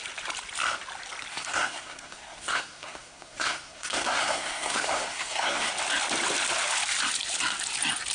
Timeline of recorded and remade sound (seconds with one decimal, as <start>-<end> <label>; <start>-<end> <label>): 0.0-1.3 recorded; 1.3-5.7 remade; 5.7-8.1 recorded